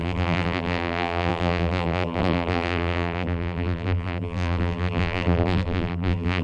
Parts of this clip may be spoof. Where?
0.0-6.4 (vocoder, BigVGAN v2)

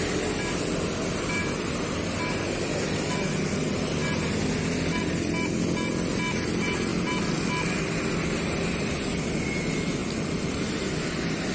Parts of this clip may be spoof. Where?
none

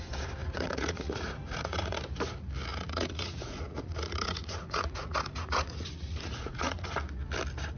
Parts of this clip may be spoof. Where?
0.4-2.0 (vocoder, Vocos); 2.7-6.9

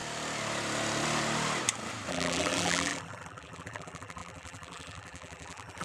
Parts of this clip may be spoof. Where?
2.1-5.8 (vocoder, BigVGAN v2)

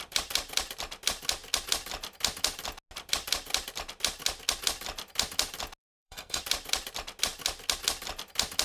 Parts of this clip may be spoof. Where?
5.8-6.4 (codec, SNAC)